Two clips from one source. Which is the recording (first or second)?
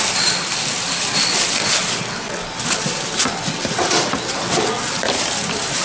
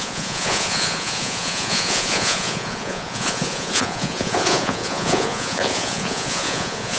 first